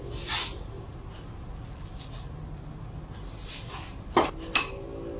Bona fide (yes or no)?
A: yes